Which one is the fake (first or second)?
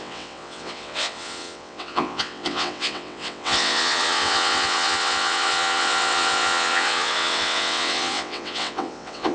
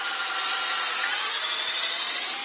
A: first